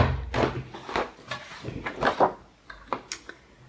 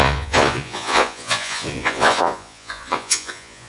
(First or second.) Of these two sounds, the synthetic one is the second